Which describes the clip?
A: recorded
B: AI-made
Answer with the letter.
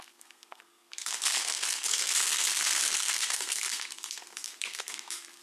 B